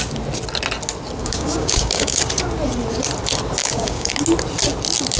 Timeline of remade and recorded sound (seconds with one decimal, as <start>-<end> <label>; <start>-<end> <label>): 0.0-1.2 recorded; 1.2-2.2 remade; 2.2-3.6 recorded; 3.6-4.1 remade; 4.1-5.2 recorded